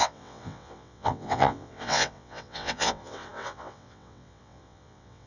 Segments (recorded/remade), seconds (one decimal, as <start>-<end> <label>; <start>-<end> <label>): 0.0-5.3 remade